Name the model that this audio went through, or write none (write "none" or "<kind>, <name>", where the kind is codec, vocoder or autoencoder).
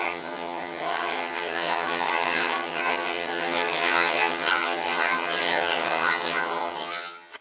vocoder, HiFi-GAN